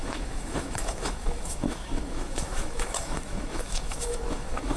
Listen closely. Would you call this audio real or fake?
fake